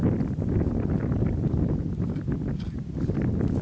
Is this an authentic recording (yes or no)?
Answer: yes